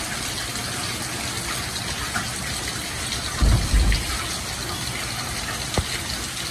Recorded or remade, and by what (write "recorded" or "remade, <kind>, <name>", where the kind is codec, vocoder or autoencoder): recorded